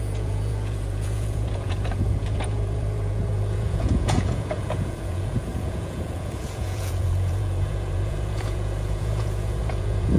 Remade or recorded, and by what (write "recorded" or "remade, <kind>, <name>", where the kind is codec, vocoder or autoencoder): remade, vocoder, Vocos